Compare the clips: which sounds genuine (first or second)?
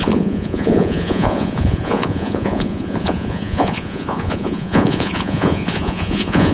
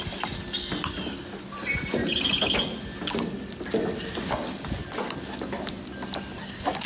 second